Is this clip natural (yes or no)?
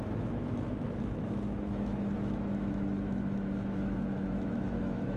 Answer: no